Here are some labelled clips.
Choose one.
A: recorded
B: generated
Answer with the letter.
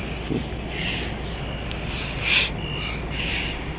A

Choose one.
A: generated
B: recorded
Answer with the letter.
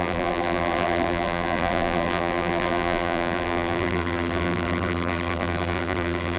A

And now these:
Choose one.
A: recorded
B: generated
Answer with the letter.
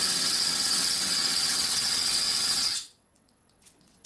B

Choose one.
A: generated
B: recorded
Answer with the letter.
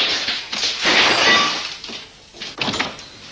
B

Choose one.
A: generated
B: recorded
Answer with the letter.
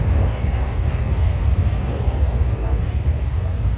A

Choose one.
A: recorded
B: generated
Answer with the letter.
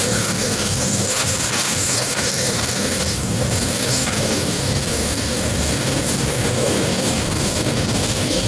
B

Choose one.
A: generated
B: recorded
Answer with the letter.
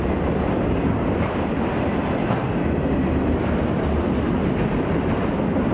B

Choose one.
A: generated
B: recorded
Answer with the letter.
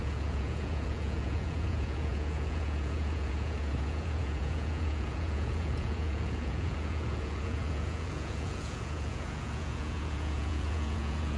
A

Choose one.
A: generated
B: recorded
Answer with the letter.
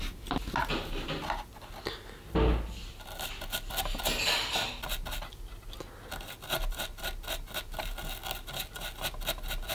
B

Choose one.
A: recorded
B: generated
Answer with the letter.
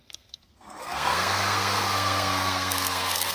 B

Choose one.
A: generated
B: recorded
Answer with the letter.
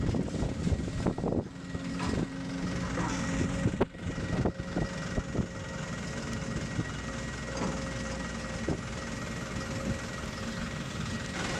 B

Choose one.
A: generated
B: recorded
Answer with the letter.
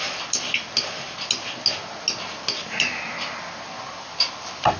B